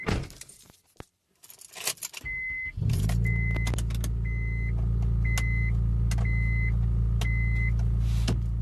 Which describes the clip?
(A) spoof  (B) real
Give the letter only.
B